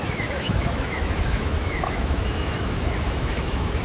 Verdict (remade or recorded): remade